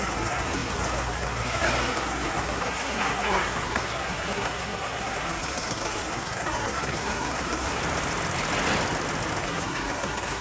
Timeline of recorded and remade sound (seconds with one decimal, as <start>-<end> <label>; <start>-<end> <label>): 0.0-7.8 remade; 7.8-9.4 recorded; 9.4-10.4 remade

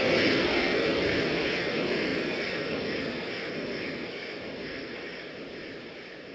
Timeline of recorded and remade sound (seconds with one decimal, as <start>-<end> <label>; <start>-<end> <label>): 0.0-5.3 remade; 5.3-6.3 recorded

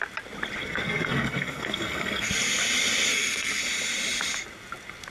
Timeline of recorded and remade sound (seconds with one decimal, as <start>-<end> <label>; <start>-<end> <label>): 0.0-0.6 recorded; 0.6-2.3 remade; 2.3-3.1 recorded; 3.1-3.6 remade; 3.6-5.1 recorded